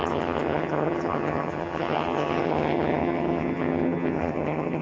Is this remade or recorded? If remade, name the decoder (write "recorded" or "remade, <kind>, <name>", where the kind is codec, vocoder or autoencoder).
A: remade, vocoder, HiFi-GAN